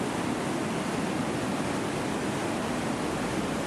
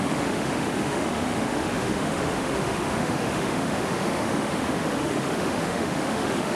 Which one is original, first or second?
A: first